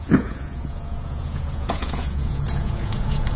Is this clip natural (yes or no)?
no